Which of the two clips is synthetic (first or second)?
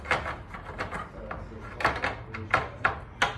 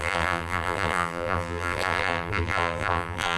second